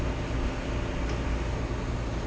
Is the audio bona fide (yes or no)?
yes